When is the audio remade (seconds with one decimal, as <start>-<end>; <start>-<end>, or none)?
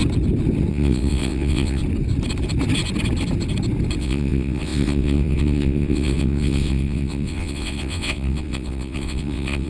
0.7-1.8; 4.0-9.7